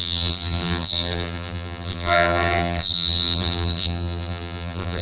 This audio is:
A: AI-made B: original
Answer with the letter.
A